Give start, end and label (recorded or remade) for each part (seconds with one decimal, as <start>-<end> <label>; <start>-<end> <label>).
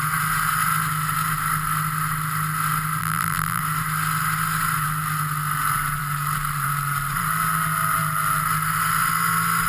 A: 0.0-3.0 recorded; 3.0-3.6 remade; 3.6-9.7 recorded